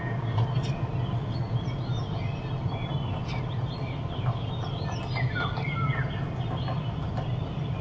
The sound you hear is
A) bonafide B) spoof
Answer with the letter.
A